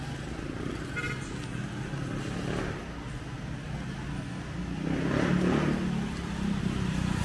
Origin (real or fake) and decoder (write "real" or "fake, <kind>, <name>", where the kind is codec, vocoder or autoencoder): real